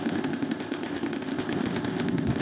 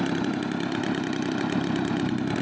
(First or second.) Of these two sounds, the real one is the second